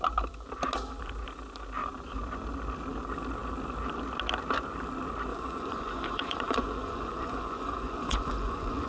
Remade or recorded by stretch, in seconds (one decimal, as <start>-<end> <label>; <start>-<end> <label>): 0.0-5.3 recorded; 5.3-8.9 remade